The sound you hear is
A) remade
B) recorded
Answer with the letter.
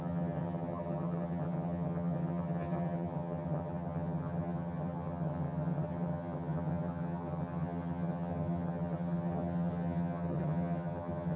A